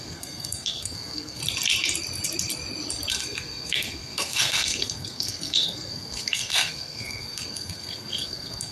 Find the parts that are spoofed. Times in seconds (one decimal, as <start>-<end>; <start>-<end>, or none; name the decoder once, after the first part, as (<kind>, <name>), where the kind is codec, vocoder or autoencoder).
0.0-1.4 (codec, SNAC); 3.1-8.7